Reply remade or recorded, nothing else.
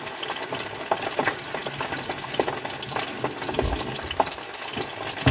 recorded